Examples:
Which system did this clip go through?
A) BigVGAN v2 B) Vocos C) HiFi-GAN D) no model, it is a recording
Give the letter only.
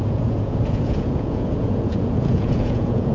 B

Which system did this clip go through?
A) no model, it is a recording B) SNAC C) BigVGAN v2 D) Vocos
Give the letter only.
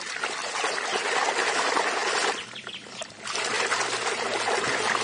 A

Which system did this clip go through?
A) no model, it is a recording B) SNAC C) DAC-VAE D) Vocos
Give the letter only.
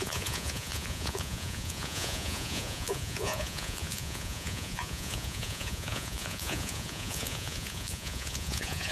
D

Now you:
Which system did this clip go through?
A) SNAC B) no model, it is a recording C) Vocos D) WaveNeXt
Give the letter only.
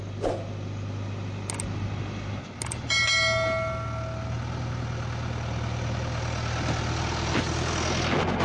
B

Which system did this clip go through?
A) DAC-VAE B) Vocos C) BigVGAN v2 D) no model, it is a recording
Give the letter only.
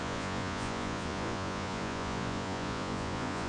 B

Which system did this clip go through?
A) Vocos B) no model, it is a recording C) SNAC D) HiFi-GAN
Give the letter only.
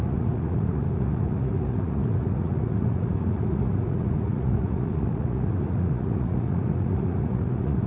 A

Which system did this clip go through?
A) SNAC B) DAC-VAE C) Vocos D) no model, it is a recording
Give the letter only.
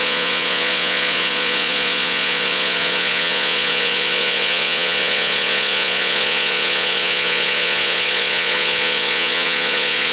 C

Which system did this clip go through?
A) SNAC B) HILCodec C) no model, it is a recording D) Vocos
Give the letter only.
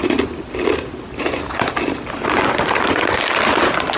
C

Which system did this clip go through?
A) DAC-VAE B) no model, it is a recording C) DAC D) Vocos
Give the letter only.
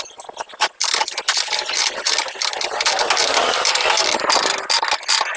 B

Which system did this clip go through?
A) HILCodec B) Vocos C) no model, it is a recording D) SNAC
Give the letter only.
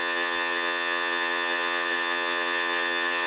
B